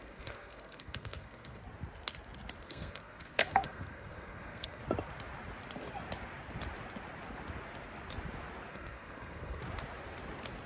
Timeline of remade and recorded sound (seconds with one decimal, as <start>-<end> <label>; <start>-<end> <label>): 0.0-1.6 remade; 1.6-2.6 recorded; 2.6-4.8 remade; 4.8-8.7 recorded; 8.7-9.6 remade; 9.6-10.7 recorded